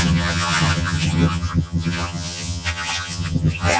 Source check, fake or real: fake